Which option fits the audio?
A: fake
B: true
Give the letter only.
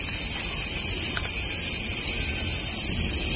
B